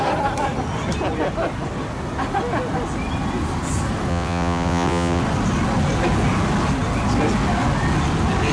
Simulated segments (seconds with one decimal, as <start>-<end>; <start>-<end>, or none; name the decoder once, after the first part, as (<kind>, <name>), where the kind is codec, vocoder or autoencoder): 4.1-5.2 (vocoder, WaveNeXt)